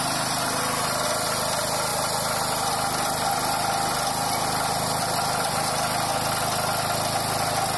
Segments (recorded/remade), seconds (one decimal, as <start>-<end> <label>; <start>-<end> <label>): 0.0-7.8 recorded